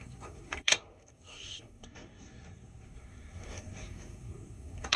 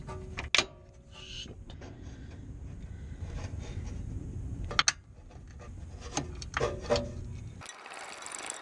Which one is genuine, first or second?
second